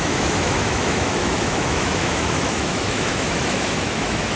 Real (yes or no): no